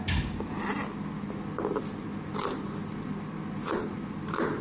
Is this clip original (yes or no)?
yes